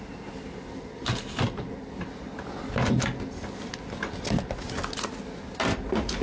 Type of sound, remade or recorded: recorded